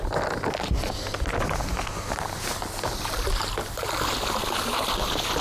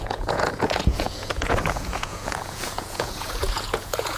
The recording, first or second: first